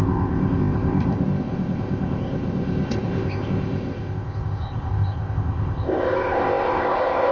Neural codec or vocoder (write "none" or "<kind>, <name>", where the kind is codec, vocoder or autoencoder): codec, ZipCodec